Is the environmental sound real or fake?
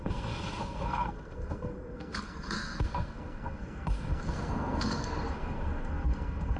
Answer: fake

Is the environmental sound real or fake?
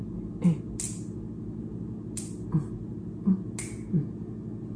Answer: real